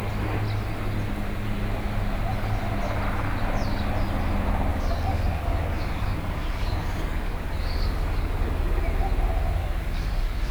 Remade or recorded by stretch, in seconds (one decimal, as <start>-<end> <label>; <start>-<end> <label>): 0.0-4.7 recorded; 4.7-8.8 remade; 8.8-9.6 recorded; 9.6-10.5 remade